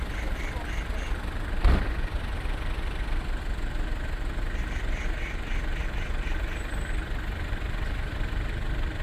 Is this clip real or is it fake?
fake